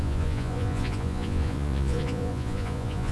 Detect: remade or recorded remade